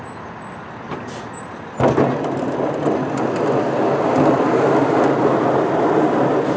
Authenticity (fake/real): real